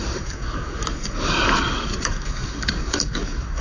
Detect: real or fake fake